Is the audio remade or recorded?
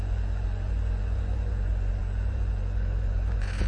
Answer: remade